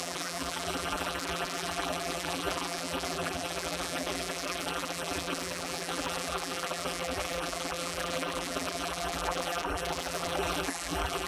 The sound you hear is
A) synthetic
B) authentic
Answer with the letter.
A